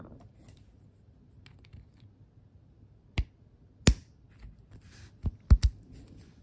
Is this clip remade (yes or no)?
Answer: no